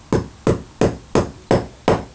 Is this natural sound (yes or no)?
yes